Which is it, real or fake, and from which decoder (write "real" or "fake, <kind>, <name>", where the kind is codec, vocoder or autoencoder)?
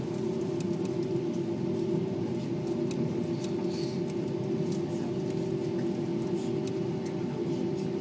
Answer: real